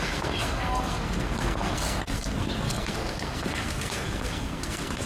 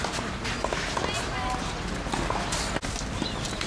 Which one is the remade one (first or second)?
first